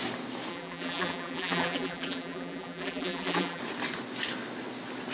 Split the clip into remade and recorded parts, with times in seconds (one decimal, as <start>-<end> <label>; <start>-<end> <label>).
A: 0.0-0.5 recorded; 0.5-3.6 remade; 3.6-5.1 recorded